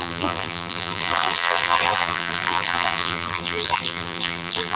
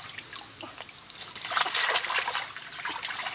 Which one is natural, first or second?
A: second